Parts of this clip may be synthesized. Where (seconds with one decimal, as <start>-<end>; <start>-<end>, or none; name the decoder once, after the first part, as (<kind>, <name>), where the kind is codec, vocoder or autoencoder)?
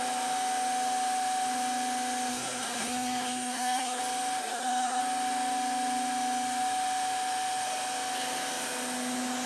2.3-4.0 (codec, SNAC); 4.4-5.0